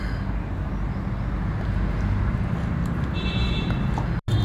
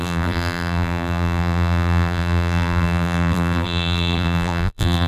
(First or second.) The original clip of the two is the first